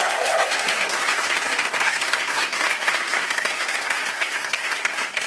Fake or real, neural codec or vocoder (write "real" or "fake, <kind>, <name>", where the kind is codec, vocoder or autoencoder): fake, codec, SNAC